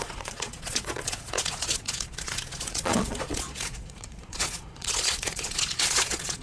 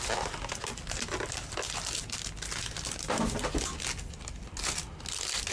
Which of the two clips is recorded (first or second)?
second